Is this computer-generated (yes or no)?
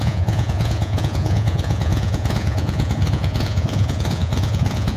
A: yes